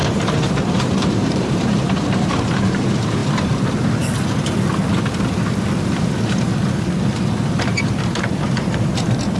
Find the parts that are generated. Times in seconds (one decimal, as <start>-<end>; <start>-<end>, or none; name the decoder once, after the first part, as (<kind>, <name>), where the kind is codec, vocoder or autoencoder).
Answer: 0.0-3.2 (vocoder, BigVGAN v2); 6.0-6.5; 7.5-9.4